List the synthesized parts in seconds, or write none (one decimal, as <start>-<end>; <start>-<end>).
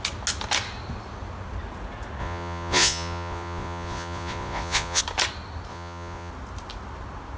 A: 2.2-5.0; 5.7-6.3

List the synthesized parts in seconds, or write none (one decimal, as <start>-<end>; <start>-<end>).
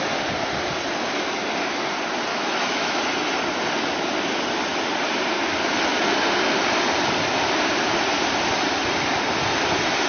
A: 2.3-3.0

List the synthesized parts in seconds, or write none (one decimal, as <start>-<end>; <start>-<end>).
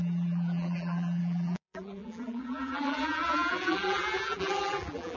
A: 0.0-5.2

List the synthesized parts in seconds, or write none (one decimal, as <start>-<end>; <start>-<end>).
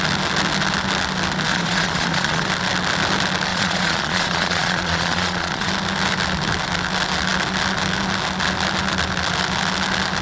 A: 1.5-2.5; 3.5-5.7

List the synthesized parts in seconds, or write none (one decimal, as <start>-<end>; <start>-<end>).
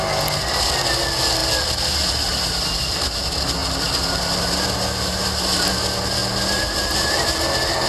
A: none